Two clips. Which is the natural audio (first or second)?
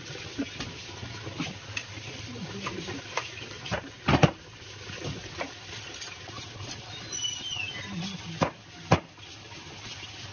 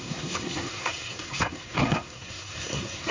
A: first